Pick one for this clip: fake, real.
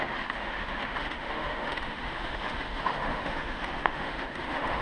fake